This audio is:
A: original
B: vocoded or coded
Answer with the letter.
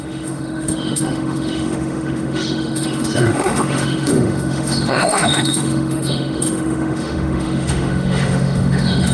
B